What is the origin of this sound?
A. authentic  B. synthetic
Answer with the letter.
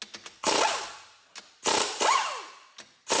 A